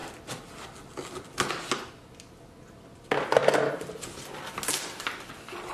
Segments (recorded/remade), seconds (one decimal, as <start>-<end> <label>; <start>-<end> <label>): 0.0-5.7 recorded